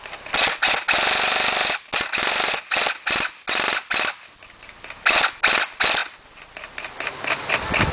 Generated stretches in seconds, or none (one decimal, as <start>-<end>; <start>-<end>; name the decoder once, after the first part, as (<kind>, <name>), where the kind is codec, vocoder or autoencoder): none